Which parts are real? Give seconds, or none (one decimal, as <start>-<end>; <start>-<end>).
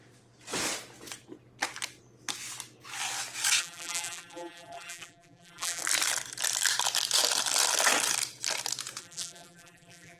0.0-3.6; 5.8-9.0